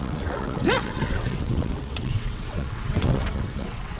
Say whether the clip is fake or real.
fake